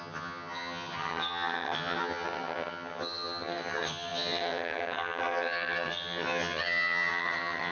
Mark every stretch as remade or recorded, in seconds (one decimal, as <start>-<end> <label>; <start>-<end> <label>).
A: 0.0-7.7 remade